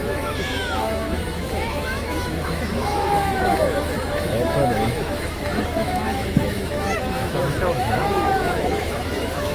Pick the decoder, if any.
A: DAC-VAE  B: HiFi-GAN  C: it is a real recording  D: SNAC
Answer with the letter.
A